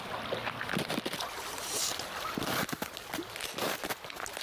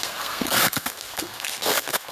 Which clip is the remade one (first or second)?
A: second